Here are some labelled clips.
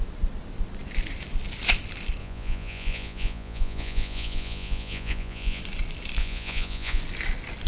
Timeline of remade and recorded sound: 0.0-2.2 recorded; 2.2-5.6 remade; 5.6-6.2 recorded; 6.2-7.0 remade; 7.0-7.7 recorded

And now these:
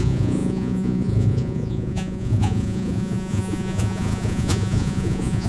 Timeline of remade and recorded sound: 0.0-5.5 remade

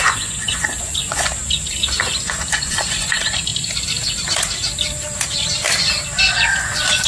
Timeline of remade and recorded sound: 0.0-1.3 remade; 1.3-2.0 recorded; 2.0-3.5 remade; 3.5-6.6 recorded; 6.6-7.1 remade

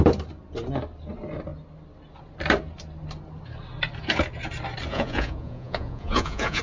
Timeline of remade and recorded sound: 0.0-4.9 recorded; 4.9-6.6 remade

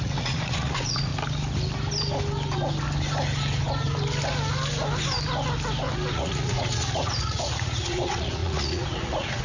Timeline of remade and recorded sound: 0.0-1.1 remade; 1.1-6.1 recorded; 6.1-9.4 remade

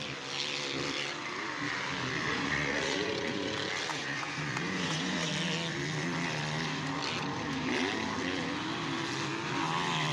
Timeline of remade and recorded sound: 0.0-2.3 recorded; 2.3-3.5 remade; 3.5-3.9 recorded; 3.9-5.3 remade; 5.3-10.1 recorded